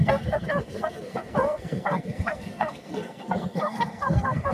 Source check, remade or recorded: remade